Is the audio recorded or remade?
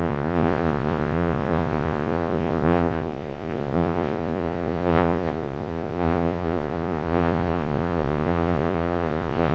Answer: remade